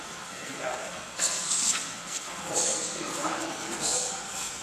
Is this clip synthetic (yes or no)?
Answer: yes